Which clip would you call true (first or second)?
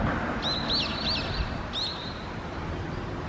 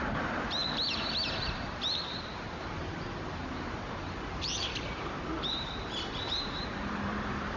first